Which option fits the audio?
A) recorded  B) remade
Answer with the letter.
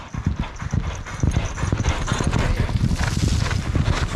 A